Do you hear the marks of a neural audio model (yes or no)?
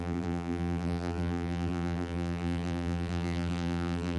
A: yes